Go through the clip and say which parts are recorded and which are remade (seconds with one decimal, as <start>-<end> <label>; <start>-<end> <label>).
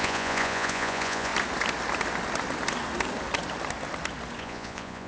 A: 0.0-1.3 remade; 1.3-4.4 recorded; 4.4-5.1 remade